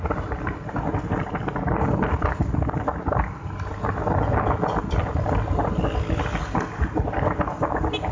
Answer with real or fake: real